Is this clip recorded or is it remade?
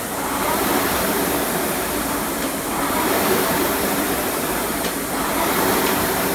remade